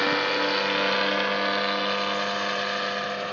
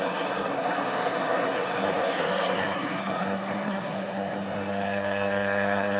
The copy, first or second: second